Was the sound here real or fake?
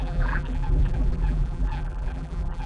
fake